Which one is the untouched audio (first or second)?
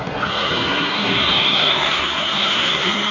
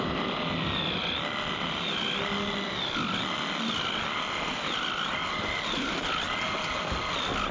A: second